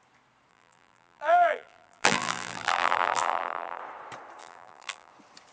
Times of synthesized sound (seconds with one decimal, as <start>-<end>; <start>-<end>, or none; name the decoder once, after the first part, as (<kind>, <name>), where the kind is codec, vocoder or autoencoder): 0.5-3.8 (vocoder, BigVGAN v2); 4.4-5.1